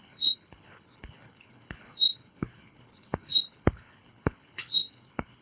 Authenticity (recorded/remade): remade